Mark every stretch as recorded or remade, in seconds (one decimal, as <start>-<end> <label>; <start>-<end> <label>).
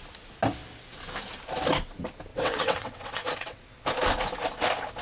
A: 0.0-2.3 recorded; 2.3-3.6 remade; 3.6-5.0 recorded